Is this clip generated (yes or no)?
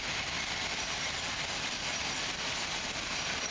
yes